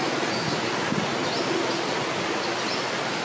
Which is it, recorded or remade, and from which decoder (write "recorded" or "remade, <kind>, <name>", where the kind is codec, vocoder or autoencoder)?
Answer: recorded